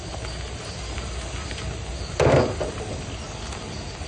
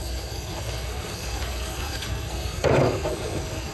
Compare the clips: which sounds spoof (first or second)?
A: second